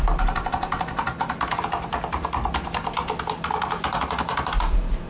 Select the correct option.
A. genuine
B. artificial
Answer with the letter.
A